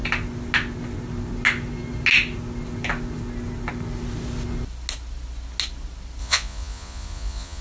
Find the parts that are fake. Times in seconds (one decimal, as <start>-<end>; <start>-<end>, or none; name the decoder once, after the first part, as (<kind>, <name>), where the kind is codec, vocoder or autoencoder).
6.2-7.6 (vocoder, Vocos)